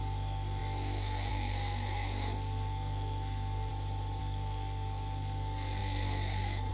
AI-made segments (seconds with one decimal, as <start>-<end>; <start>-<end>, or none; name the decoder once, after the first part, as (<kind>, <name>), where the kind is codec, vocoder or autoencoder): 0.0-3.7 (codec, SNAC); 4.2-6.7